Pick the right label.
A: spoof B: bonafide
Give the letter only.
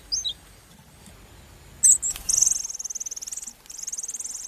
B